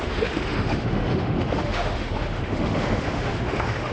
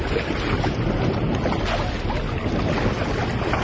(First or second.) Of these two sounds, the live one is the second